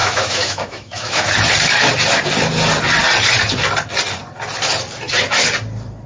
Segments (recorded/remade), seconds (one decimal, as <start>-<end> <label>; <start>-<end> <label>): 0.0-1.3 remade; 1.3-6.1 recorded